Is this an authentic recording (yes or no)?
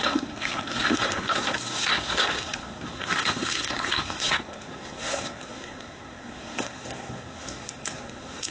no